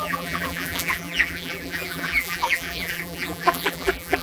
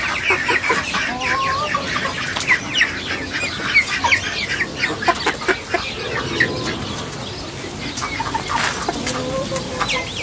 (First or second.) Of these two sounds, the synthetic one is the first